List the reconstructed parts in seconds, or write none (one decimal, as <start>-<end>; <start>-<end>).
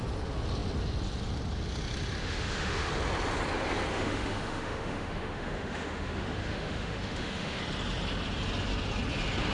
2.2-2.9; 3.9-7.6